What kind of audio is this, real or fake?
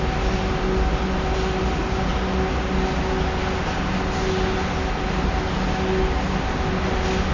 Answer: real